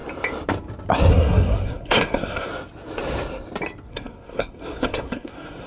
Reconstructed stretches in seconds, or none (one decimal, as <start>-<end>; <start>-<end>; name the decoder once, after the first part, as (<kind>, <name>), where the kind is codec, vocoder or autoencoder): 1.1-2.5 (codec, SNAC); 3.9-5.7

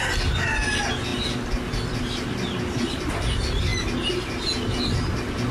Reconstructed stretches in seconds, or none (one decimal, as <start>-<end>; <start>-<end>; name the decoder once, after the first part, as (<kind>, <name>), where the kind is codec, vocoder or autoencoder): none

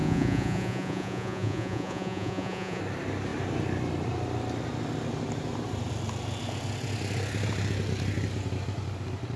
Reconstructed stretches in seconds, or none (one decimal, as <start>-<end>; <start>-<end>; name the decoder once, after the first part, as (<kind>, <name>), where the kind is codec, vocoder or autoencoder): 0.0-2.8 (vocoder, Vocos)

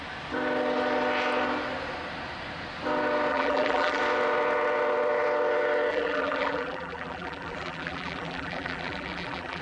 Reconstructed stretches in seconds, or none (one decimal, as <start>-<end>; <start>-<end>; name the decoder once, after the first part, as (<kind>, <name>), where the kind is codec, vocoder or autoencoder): 3.3-4.0 (vocoder, BigVGAN v2); 5.9-9.6

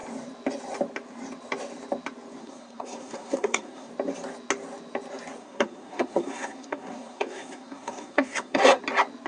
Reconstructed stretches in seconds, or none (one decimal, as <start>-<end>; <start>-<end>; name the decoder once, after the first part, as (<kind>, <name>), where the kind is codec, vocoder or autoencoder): 2.4-3.9 (codec, SNAC); 5.4-8.8

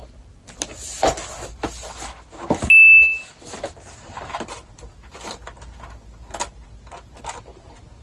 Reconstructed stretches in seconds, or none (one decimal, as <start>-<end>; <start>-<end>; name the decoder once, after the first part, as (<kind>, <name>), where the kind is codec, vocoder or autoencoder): none

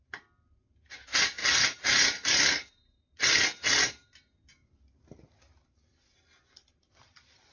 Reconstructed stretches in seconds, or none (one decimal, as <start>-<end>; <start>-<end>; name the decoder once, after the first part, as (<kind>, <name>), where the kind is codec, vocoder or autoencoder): none

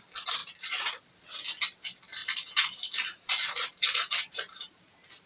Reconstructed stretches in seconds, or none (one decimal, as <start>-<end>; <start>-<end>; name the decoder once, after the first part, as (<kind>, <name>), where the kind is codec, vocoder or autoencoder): 0.4-1.0 (vocoder, BigVGAN v2); 2.2-5.3